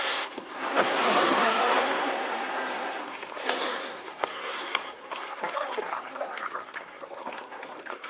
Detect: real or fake fake